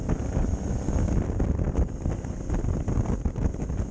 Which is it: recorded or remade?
recorded